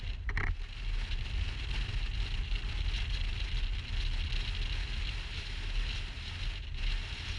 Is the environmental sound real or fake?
real